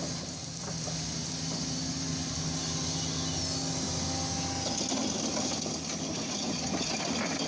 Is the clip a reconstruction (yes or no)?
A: no